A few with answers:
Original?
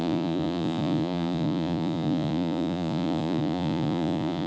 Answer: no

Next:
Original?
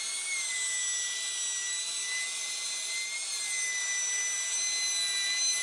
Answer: yes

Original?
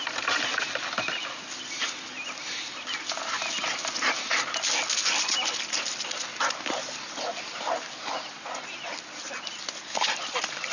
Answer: yes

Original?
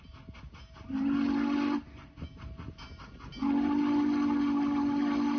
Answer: yes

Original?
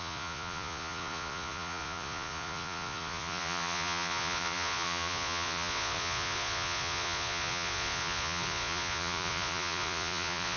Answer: no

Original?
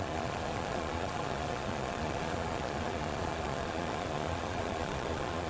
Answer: no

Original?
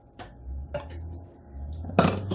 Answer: yes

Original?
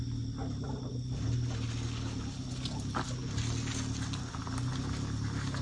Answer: yes